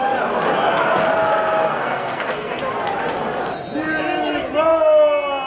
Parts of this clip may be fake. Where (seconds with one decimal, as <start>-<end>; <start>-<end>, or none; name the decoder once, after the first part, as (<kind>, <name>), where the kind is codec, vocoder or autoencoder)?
1.6-2.7 (codec, SNAC)